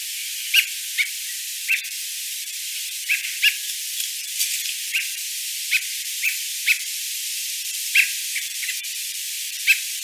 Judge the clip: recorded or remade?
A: remade